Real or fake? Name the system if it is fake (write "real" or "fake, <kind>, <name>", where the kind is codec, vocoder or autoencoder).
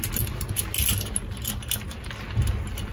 real